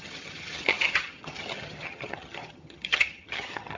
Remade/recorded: remade